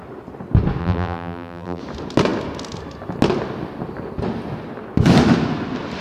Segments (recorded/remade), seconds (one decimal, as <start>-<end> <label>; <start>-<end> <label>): 0.0-0.8 recorded; 0.8-1.8 remade; 1.8-6.0 recorded